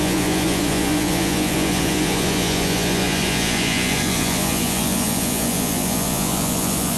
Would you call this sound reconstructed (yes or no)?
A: yes